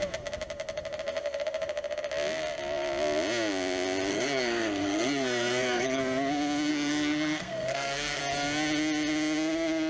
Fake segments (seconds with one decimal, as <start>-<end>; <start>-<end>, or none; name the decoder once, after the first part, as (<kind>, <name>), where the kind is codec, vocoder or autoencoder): 4.1-6.0 (codec, SNAC); 6.7-8.2